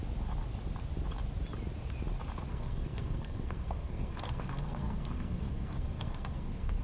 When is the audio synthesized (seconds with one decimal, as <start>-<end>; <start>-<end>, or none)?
2.5-6.8